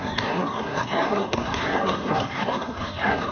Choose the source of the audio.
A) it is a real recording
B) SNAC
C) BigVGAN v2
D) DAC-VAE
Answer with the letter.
B